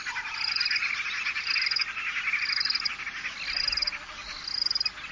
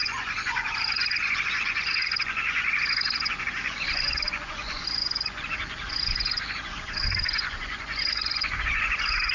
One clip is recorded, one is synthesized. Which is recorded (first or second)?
first